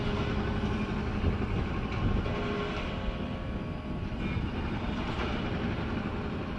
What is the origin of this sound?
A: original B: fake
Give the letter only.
A